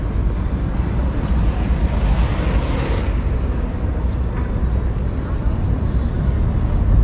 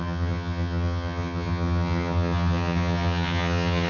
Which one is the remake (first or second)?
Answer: second